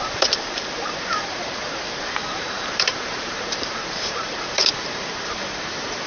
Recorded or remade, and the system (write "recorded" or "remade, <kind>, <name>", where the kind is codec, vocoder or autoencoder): remade, vocoder, BigVGAN v2